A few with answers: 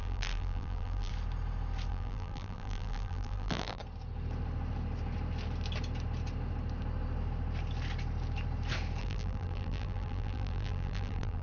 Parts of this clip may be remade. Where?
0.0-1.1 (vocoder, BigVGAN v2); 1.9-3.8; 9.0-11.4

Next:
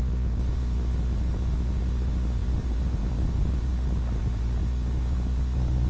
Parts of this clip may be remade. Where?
2.4-3.7 (vocoder, BigVGAN v2)